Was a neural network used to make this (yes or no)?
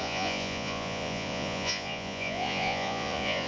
yes